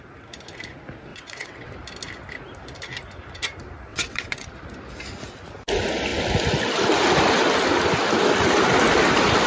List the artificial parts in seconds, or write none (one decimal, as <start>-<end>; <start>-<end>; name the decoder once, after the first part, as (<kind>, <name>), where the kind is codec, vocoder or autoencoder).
1.1-1.7 (vocoder, WaveNeXt); 3.9-4.5